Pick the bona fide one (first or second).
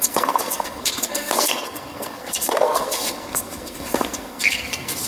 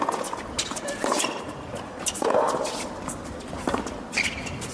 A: second